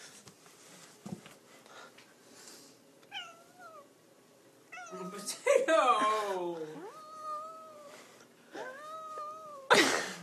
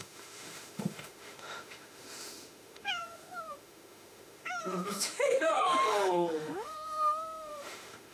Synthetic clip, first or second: second